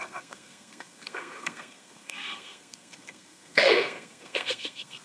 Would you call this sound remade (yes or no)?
yes